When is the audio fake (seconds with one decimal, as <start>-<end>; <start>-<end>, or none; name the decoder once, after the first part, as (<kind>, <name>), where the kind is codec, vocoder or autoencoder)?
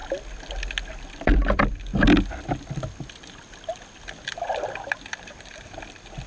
0.9-1.9 (vocoder, BigVGAN v2); 3.9-6.3